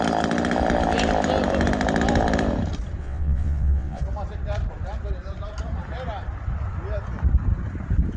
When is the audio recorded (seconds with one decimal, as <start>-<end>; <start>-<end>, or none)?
0.0-3.0; 4.0-8.2